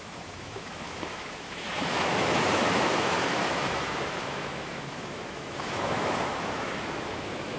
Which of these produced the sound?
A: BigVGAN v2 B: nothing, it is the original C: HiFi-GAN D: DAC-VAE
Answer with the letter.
D